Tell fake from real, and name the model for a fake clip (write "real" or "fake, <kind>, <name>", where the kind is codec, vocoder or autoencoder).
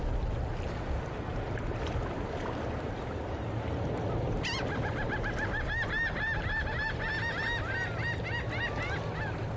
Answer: real